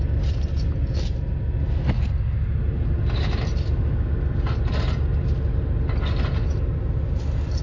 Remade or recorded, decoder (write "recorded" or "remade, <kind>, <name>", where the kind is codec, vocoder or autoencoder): recorded